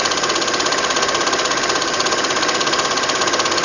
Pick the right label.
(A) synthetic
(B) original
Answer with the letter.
B